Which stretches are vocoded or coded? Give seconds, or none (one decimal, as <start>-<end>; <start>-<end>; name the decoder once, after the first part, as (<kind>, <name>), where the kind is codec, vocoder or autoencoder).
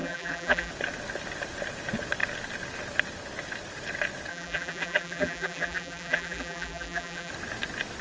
0.0-0.7 (vocoder, BigVGAN v2); 4.3-7.3